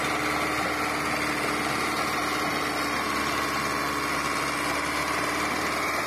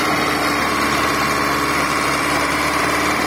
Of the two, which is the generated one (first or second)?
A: second